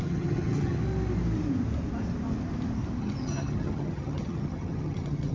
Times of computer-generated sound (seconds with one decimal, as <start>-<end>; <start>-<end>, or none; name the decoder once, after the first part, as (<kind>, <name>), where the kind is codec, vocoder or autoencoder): 0.0-0.8 (vocoder, HiFi-GAN); 3.0-5.3